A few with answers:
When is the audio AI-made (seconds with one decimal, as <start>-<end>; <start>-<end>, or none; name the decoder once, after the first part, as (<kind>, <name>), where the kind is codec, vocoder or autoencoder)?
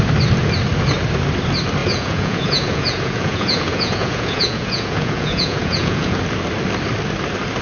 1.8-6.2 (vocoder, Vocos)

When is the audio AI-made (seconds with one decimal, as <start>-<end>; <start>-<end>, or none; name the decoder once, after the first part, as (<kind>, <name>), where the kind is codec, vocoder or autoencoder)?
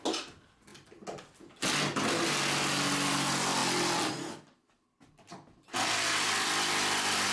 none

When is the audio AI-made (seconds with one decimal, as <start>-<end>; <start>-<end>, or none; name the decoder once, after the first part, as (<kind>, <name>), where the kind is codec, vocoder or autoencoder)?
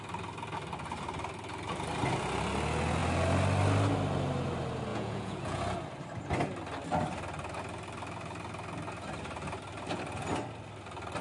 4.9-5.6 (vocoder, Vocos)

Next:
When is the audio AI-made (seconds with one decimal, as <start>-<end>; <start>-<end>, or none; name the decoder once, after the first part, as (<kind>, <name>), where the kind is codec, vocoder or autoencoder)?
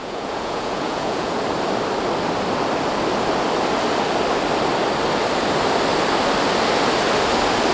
0.0-1.3 (vocoder, Vocos)